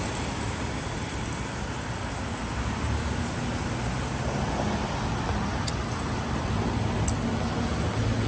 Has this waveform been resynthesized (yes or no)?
no